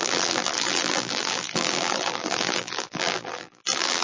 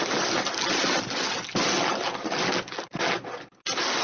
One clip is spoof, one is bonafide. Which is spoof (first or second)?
first